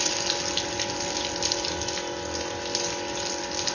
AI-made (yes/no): no